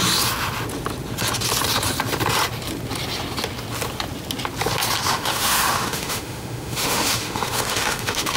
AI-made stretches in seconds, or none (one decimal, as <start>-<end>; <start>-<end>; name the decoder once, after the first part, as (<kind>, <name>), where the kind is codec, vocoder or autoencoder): 5.1-8.4 (autoencoder, DAC-VAE)